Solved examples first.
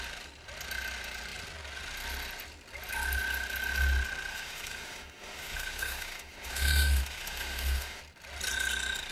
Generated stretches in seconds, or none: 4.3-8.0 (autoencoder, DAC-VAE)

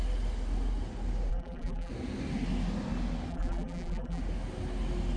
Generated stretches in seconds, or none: 1.3-1.9 (vocoder, BigVGAN v2); 3.3-4.2